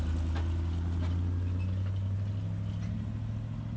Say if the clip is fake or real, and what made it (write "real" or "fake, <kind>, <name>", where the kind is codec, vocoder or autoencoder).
real